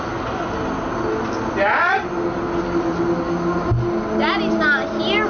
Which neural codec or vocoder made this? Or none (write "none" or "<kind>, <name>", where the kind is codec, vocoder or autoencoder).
none